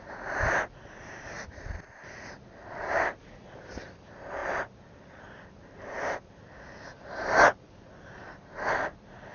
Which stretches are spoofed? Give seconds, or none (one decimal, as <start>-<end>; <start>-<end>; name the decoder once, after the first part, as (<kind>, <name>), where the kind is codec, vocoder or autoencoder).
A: none